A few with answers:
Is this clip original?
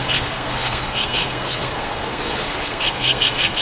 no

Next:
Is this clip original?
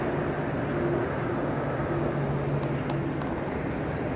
yes